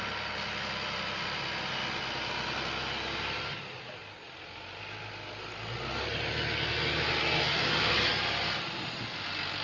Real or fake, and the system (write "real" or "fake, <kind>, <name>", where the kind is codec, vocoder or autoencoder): real